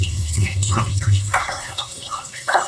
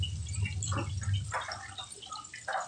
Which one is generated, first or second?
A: first